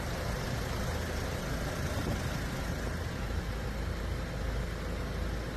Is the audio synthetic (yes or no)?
no